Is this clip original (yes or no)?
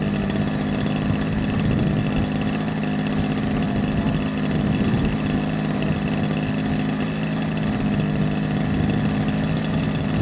yes